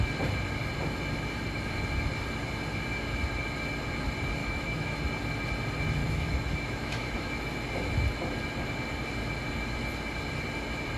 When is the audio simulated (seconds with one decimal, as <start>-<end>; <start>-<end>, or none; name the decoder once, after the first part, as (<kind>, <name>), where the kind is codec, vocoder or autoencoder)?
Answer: 4.4-5.0 (autoencoder, DAC-VAE); 6.0-7.3